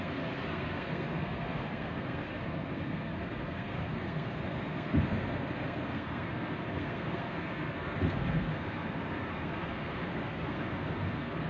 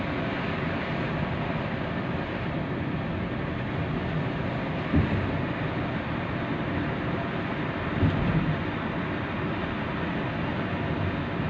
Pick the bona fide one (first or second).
second